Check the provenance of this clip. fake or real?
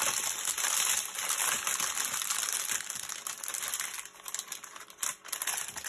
real